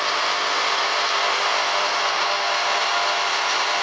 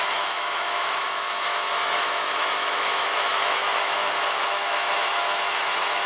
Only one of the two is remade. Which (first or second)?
second